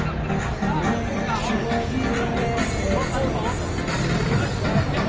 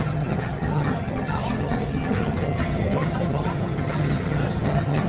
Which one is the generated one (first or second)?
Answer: second